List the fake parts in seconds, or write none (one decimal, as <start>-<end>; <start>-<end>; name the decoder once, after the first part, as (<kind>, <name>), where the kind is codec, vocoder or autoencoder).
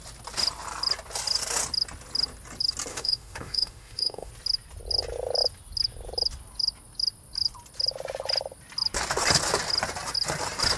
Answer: 2.9-4.3 (autoencoder, DAC-VAE)